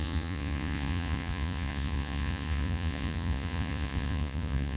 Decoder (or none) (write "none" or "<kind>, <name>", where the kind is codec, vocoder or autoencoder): vocoder, Vocos